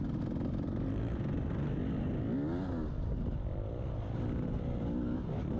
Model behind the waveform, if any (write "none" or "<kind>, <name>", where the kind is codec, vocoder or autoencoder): none